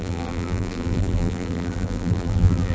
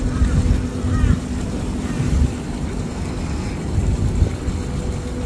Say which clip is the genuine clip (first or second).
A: second